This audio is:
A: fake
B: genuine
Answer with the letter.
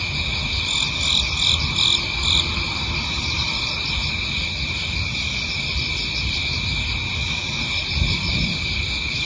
B